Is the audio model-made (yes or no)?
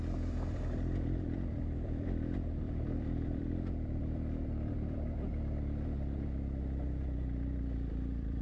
yes